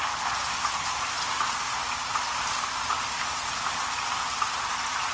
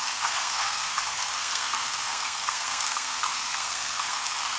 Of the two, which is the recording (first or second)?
first